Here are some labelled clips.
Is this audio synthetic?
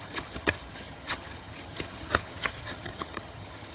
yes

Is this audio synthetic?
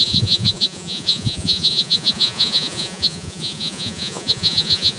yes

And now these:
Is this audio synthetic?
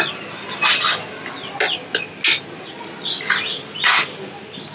no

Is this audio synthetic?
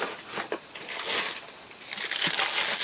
no